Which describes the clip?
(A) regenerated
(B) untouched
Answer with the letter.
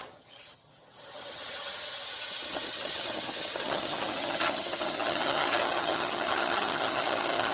A